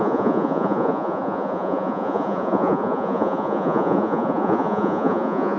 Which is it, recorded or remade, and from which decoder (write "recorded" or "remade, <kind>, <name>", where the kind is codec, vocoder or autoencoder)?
remade, vocoder, Vocos